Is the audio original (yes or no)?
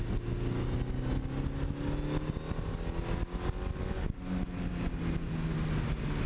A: yes